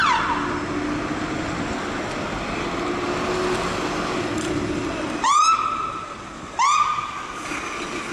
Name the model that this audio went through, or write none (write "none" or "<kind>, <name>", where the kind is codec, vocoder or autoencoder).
none